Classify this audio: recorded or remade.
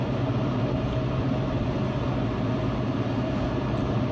recorded